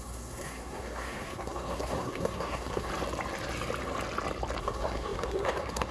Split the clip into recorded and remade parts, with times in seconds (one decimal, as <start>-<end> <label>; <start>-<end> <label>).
0.0-2.9 remade; 2.9-4.6 recorded; 4.6-5.9 remade